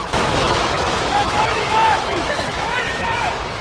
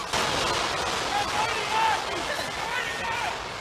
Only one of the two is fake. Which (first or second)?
first